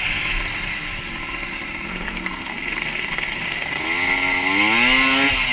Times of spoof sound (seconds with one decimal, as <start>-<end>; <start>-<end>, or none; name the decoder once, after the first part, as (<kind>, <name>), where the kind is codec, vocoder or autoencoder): 1.9-3.8 (codec, SNAC)